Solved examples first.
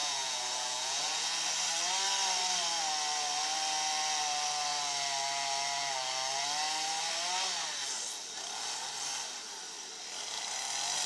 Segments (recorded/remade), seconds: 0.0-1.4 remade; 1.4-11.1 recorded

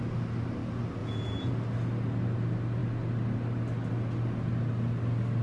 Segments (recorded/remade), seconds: 0.0-1.0 recorded; 1.0-1.5 remade; 1.5-5.4 recorded

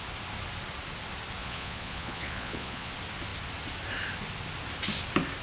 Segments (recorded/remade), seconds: 0.0-1.4 recorded; 1.4-2.9 remade; 2.9-5.4 recorded

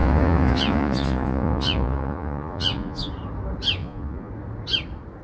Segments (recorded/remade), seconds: 0.0-3.1 remade; 3.1-3.8 recorded; 3.8-4.3 remade; 4.3-5.2 recorded

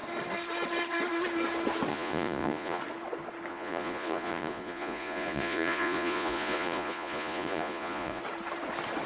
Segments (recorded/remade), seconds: 0.0-1.9 recorded; 1.9-2.8 remade; 2.8-3.5 recorded; 3.5-8.2 remade; 8.2-9.1 recorded

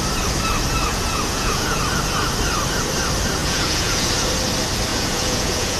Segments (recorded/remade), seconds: 0.0-0.9 recorded; 0.9-1.8 remade; 1.8-3.4 recorded; 3.4-4.1 remade; 4.1-4.9 recorded; 4.9-5.8 remade